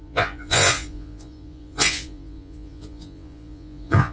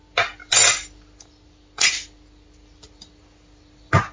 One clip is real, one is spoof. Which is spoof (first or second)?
first